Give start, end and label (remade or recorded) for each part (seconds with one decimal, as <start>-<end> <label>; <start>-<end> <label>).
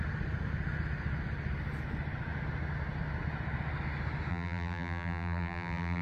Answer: 0.0-4.3 recorded; 4.3-6.0 remade